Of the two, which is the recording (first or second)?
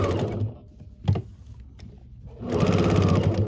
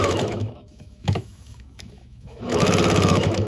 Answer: first